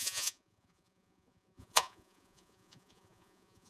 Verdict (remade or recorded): remade